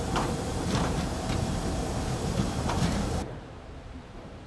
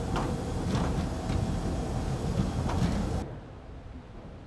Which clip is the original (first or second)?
second